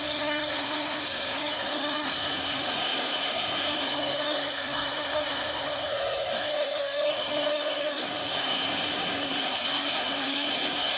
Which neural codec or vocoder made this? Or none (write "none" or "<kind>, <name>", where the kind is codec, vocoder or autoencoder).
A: codec, SNAC